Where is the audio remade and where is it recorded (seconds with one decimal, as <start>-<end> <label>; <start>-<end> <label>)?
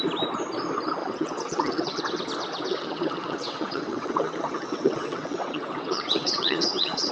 0.0-1.0 recorded; 1.0-2.0 remade; 2.0-2.7 recorded; 2.7-7.1 remade